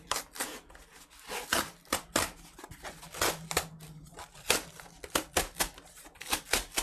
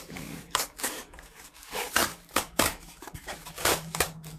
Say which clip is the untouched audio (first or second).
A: first